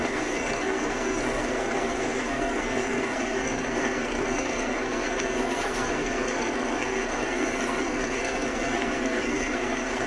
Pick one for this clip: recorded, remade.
remade